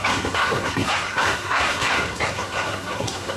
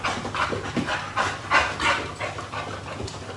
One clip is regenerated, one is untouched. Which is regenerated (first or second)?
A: first